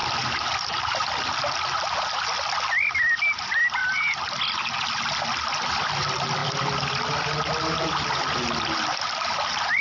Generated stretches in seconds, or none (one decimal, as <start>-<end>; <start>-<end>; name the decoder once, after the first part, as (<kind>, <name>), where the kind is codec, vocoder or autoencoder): none